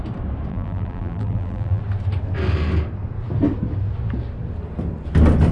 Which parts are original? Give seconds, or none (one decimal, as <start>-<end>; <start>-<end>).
0.0-0.5; 1.8-5.5